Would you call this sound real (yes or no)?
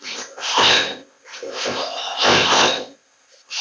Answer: no